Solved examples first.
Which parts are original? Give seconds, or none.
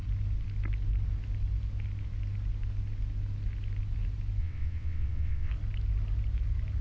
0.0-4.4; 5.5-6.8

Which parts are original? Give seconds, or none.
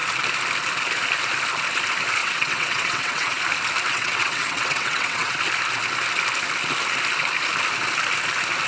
0.0-2.2; 3.4-3.9; 5.3-8.7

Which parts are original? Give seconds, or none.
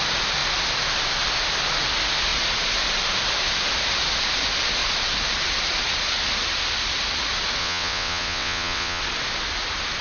0.0-7.6; 9.0-10.0